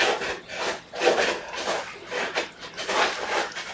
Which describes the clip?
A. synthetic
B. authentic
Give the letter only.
B